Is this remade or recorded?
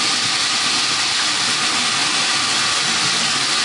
recorded